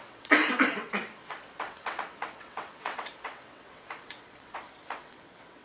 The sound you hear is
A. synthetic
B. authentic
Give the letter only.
A